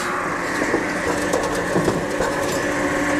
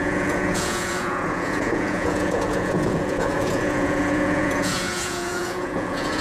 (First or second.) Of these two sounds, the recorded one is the first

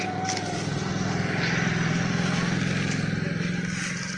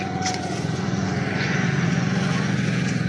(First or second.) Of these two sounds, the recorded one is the first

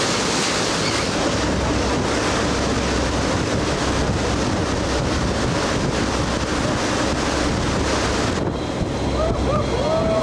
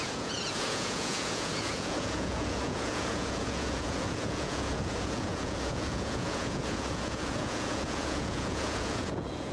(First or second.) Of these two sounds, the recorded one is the first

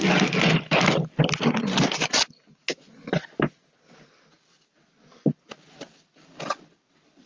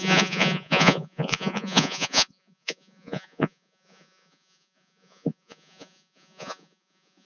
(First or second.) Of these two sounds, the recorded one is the first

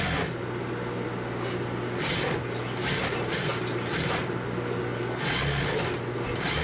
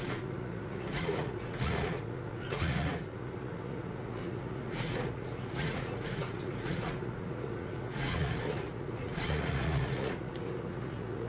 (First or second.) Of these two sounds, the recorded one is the first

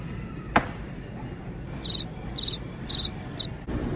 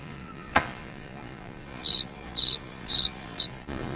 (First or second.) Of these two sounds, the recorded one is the first